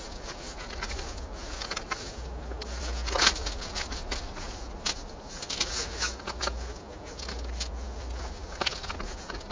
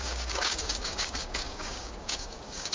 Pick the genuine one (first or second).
first